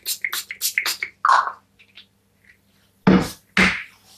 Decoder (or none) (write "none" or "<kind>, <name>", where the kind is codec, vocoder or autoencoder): none